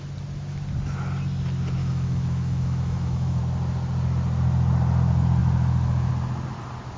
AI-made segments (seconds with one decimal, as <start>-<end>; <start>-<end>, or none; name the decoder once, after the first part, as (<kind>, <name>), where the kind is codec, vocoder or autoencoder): 1.8-3.4 (autoencoder, DAC-VAE)